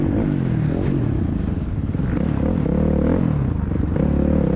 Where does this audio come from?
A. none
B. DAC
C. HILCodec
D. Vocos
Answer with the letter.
A